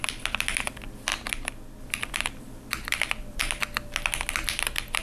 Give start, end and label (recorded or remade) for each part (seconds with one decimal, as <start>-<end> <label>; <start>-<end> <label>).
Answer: 0.0-1.1 remade; 1.1-1.8 recorded; 1.8-3.4 remade; 3.4-5.0 recorded